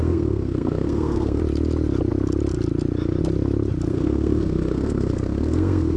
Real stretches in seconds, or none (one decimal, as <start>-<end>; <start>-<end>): 1.4-3.9